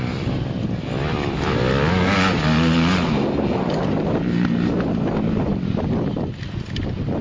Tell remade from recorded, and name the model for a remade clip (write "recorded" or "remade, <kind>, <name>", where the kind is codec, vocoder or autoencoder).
recorded